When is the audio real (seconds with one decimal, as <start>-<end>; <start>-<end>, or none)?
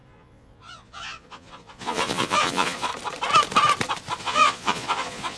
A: 2.9-4.2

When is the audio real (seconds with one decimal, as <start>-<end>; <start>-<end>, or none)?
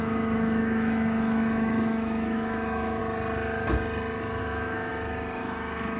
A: 3.0-4.4; 4.9-5.4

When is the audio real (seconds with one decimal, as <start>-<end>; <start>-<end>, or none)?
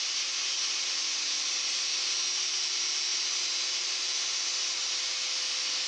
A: 0.0-5.9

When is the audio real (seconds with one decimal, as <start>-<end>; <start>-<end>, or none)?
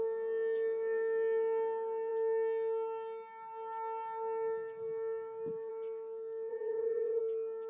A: 0.0-6.5; 7.2-7.7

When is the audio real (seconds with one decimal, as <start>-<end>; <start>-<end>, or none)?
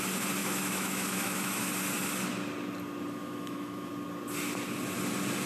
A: 0.0-0.4; 1.7-3.2; 3.9-5.5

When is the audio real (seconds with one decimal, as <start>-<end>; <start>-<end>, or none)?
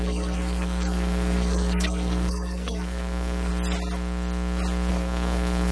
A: 3.5-4.9